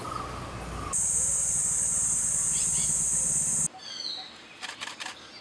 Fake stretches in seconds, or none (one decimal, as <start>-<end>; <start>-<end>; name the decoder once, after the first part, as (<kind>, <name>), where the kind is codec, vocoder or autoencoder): none